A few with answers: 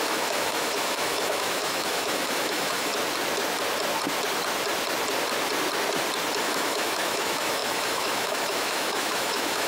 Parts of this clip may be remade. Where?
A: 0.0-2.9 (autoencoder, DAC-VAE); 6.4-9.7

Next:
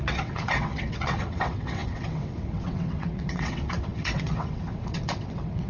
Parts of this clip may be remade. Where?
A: 0.0-5.7 (vocoder, WaveNeXt)